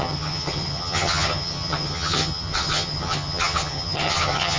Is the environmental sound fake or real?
fake